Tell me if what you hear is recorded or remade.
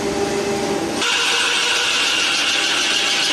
recorded